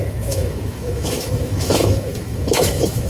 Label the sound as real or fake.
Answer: fake